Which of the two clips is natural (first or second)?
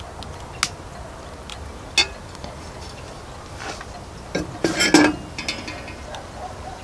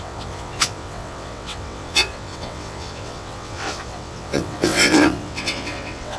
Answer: first